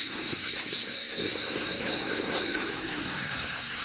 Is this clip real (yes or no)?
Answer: no